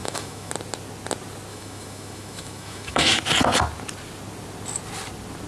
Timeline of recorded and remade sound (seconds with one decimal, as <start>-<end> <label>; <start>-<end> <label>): 0.0-0.5 remade; 0.5-1.5 recorded; 1.5-3.2 remade; 3.2-5.5 recorded

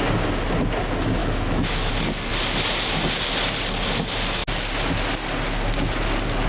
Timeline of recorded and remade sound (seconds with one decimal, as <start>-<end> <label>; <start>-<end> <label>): 0.0-1.2 recorded; 1.2-1.9 remade; 1.9-6.5 recorded